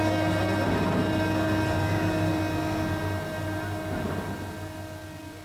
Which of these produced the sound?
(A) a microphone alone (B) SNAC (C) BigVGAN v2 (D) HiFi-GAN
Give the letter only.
A